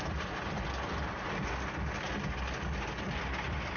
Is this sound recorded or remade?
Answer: recorded